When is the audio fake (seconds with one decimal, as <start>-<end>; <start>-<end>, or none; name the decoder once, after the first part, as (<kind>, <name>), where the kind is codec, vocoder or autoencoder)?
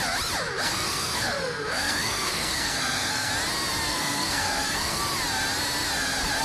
0.6-3.3 (codec, SNAC); 3.9-5.0